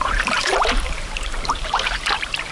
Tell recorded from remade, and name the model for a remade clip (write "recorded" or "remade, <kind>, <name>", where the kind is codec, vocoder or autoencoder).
remade, vocoder, BigVGAN v2